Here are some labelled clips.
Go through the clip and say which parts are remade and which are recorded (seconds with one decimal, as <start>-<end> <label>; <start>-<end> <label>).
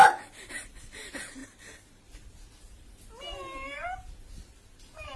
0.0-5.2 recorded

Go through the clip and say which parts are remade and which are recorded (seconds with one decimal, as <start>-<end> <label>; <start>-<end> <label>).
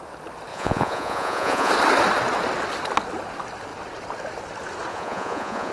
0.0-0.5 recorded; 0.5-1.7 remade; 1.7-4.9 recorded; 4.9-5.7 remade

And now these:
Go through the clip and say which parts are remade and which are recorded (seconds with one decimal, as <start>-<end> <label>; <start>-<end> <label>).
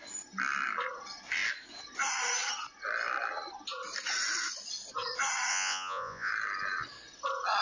0.0-5.5 recorded; 5.5-6.3 remade; 6.3-7.6 recorded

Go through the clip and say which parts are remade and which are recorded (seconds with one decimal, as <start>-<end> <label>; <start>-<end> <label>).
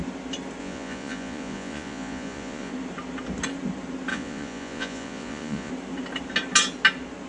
0.0-0.6 recorded; 0.6-2.7 remade; 2.7-4.1 recorded; 4.1-5.7 remade; 5.7-7.3 recorded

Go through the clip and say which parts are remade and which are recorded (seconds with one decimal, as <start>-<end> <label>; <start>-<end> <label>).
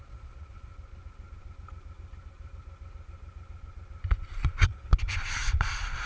0.0-0.7 remade; 0.7-4.4 recorded; 4.4-4.9 remade; 4.9-5.5 recorded; 5.5-6.1 remade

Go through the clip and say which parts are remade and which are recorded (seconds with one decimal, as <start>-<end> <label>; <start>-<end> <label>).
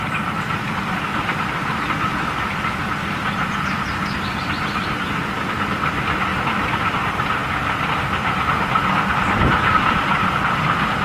0.0-11.0 recorded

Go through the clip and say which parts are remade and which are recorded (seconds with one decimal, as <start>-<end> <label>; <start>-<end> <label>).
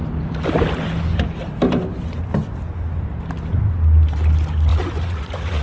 0.0-4.7 recorded; 4.7-5.6 remade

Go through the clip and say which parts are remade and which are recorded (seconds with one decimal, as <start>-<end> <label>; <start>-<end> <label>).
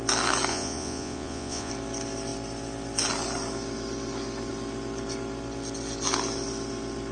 0.0-0.5 recorded; 0.5-1.7 remade; 1.7-7.1 recorded